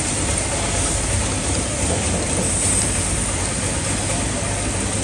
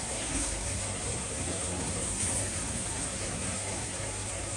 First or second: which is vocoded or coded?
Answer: second